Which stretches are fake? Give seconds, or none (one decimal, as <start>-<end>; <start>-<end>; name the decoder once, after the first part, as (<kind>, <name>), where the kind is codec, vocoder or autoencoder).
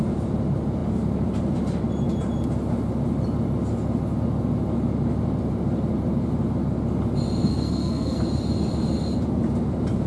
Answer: 7.5-8.2 (codec, SNAC)